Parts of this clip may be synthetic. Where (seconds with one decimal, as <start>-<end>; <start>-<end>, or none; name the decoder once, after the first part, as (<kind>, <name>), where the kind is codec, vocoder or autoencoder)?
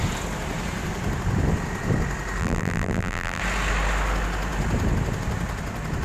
2.4-3.4 (vocoder, BigVGAN v2)